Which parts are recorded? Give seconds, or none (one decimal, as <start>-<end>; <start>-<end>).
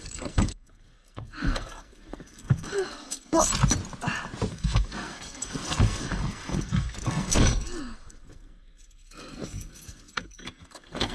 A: 3.5-4.5